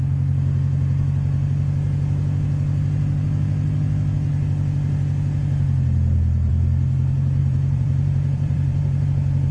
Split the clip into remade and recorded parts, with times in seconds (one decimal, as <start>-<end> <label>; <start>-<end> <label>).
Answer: 0.0-7.4 recorded; 7.4-9.1 remade; 9.1-9.5 recorded